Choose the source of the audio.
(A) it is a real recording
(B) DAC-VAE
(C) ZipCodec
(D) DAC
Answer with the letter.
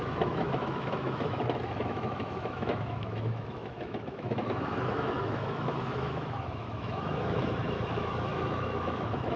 B